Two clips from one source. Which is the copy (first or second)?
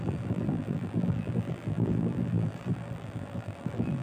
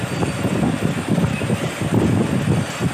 first